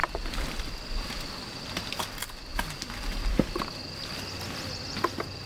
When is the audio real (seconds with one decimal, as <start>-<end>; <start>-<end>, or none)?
0.0-5.5